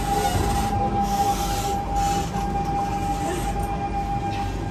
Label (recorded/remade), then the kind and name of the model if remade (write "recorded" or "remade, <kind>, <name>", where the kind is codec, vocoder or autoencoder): recorded